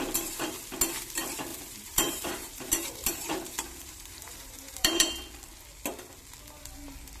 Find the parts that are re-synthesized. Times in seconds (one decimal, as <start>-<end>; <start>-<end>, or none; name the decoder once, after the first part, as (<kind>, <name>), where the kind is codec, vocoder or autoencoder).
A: 1.5-5.1 (vocoder, BigVGAN v2)